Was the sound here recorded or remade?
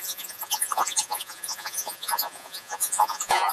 remade